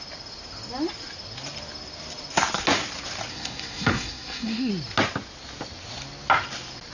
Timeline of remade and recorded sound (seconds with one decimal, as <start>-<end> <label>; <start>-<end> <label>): 0.0-3.3 recorded; 3.3-4.7 remade; 4.7-6.9 recorded